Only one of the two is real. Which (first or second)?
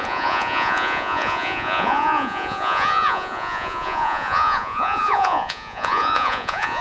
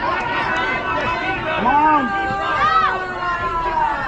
second